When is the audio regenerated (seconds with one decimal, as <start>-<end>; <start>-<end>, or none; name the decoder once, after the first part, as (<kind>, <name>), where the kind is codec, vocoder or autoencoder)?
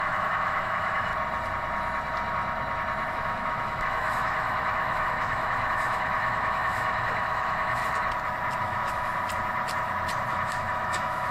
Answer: 0.0-1.1 (autoencoder, DAC-VAE); 3.1-7.8; 8.6-9.1; 10.3-11.3